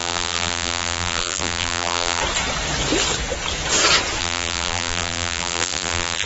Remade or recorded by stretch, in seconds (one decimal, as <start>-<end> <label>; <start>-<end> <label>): 0.0-2.2 remade; 2.2-4.2 recorded; 4.2-6.3 remade